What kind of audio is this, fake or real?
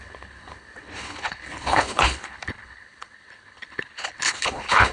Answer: fake